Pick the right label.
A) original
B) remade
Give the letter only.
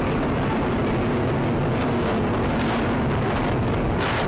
A